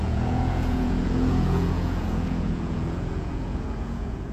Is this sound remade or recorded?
remade